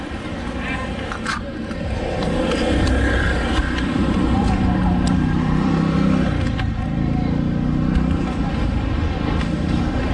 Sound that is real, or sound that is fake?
real